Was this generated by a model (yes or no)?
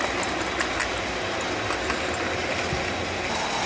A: no